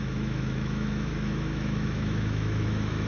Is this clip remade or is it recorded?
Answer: remade